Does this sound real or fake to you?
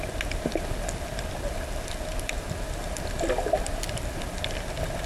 real